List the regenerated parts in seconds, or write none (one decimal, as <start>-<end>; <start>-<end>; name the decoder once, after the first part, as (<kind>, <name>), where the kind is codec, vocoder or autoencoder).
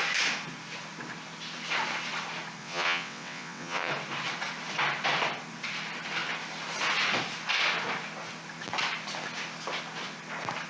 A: 2.6-3.9 (vocoder, WaveNeXt)